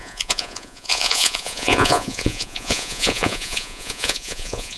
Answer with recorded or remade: remade